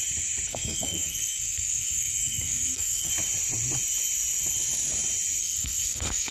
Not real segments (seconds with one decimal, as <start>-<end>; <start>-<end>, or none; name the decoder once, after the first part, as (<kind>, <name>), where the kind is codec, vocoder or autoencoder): 0.5-3.1 (codec, SNAC); 5.4-6.3